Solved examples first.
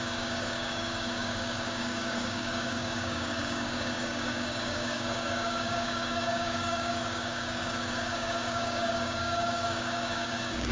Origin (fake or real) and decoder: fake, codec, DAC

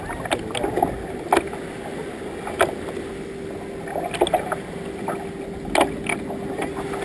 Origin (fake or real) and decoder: real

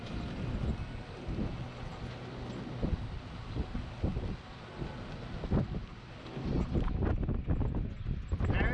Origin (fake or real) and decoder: real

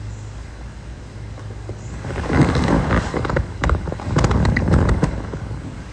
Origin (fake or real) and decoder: fake, codec, DAC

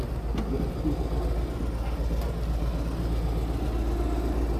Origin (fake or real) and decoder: real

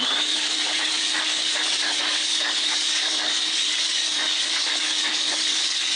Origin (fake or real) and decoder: fake, codec, DAC